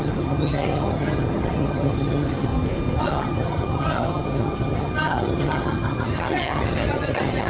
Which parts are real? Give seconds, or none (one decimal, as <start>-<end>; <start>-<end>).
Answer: 2.5-3.0